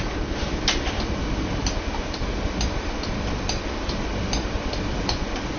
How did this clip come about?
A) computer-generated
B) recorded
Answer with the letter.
B